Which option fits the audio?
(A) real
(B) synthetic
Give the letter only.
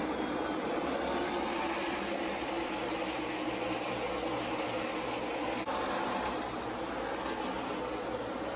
A